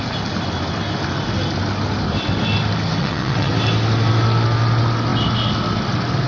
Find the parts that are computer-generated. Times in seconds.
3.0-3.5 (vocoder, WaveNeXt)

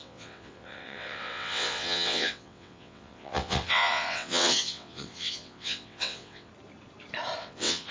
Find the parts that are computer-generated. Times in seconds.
0.0-6.5 (vocoder, WaveNeXt); 7.4-7.9

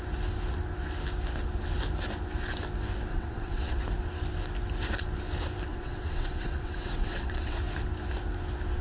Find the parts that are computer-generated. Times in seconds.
3.1-3.8 (vocoder, WaveNeXt); 5.7-7.6

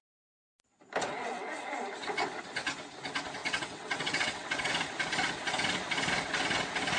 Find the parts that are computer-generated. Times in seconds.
1.1-1.7 (vocoder, WaveNeXt); 3.4-4.7